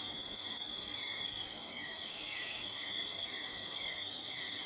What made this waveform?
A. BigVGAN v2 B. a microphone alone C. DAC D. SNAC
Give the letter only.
D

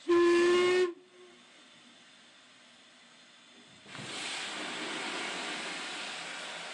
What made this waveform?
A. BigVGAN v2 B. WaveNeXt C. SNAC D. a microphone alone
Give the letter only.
D